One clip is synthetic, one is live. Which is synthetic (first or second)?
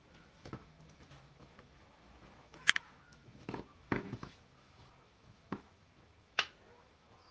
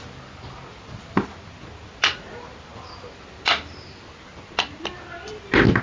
first